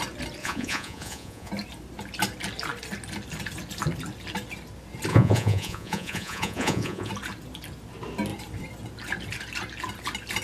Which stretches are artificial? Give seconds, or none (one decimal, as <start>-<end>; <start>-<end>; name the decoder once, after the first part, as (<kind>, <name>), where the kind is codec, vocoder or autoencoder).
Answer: 0.4-1.5 (vocoder, Vocos); 5.1-7.1